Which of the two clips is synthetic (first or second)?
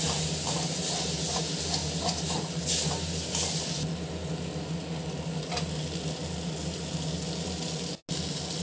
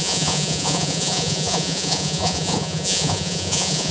second